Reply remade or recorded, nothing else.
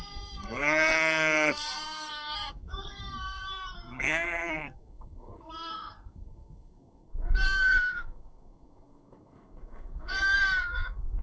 remade